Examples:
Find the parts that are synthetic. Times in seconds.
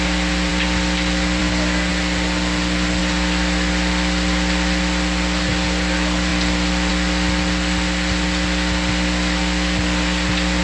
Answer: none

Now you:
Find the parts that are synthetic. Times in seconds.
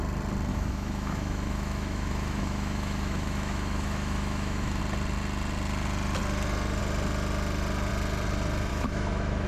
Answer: 0.5-4.8; 8.7-9.5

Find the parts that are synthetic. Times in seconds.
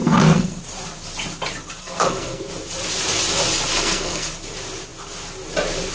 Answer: 0.0-0.6; 1.8-2.5; 3.7-4.3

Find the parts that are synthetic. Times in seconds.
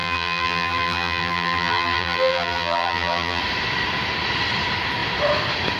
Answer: 0.0-3.4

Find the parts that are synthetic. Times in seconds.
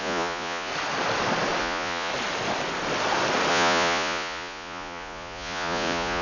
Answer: 0.0-0.7; 1.6-2.1; 3.5-6.2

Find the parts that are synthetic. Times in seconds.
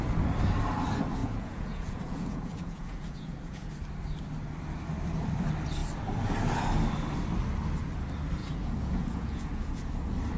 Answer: 1.2-3.7; 8.4-9.9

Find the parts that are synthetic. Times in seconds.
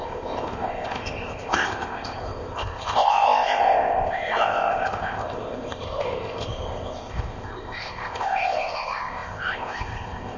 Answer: 0.0-10.4